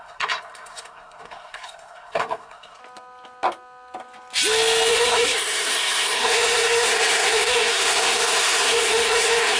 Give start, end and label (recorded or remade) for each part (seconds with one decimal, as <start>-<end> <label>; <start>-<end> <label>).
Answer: 0.0-2.8 remade; 2.8-4.9 recorded; 4.9-9.6 remade